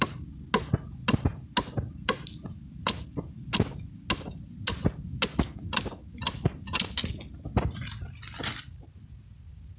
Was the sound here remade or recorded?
recorded